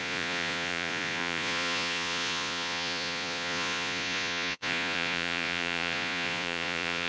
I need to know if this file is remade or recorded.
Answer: remade